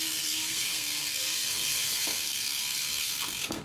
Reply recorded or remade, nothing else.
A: remade